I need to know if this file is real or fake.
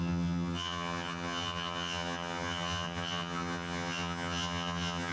fake